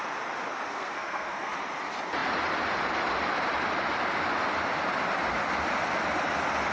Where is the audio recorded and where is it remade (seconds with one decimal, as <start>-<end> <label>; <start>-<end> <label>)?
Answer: 0.0-0.7 recorded; 0.7-1.5 remade; 1.5-6.7 recorded